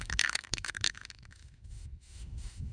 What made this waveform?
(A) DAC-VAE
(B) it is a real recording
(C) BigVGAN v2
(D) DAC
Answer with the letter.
A